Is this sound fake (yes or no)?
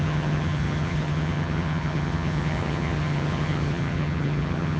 yes